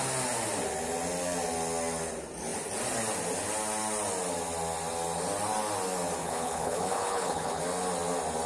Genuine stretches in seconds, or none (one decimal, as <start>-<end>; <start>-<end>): 0.0-6.2; 7.6-8.5

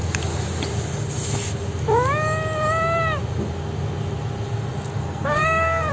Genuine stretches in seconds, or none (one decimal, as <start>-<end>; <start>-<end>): 0.0-5.0

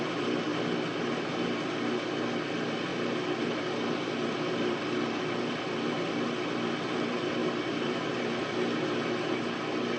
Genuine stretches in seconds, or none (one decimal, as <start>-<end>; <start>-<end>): 0.5-2.5; 2.9-3.4

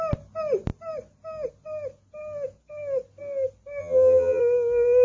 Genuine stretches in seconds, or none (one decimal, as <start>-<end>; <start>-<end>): 0.0-3.8; 4.4-5.0

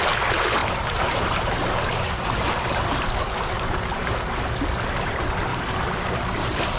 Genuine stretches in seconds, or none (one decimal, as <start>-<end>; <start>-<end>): 0.0-0.6; 4.1-5.5